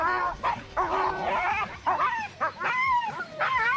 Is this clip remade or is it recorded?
remade